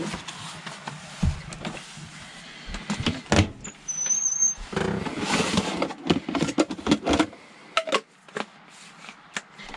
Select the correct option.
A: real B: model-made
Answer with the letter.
A